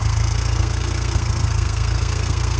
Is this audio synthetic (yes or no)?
yes